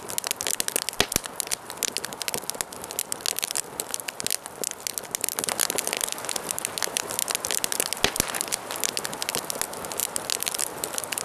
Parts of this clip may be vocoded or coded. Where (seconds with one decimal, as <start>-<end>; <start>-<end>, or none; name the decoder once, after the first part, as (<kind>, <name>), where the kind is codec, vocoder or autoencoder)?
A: none